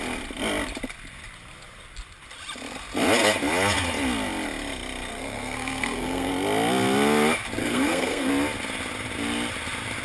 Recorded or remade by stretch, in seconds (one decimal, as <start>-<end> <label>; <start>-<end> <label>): 0.0-5.1 recorded; 5.1-6.3 remade; 6.3-7.6 recorded; 7.6-8.3 remade; 8.3-10.0 recorded